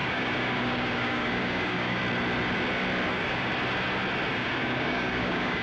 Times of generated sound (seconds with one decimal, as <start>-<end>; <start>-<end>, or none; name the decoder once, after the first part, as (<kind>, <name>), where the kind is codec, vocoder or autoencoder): 0.0-2.0 (codec, DAC); 3.1-3.5; 4.3-5.6